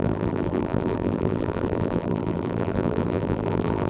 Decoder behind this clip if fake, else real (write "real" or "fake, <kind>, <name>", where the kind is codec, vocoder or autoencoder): fake, vocoder, BigVGAN v2